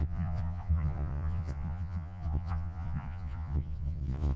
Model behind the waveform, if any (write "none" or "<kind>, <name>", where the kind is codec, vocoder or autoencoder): vocoder, Vocos